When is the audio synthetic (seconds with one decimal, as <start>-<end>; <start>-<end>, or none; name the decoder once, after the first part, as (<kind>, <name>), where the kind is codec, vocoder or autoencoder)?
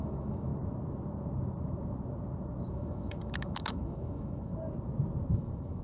0.0-0.5 (autoencoder, DAC-VAE); 2.7-4.5; 5.3-5.8